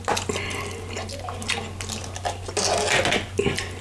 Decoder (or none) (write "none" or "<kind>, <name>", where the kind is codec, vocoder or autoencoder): none